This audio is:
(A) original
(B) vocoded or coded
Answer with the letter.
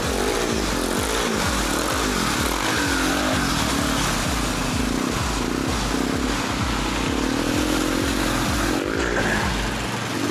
A